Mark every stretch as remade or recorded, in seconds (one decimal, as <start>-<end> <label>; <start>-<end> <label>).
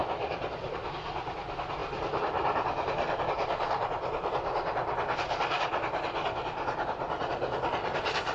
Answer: 0.0-0.6 remade; 0.6-1.8 recorded; 1.8-3.2 remade; 3.2-8.3 recorded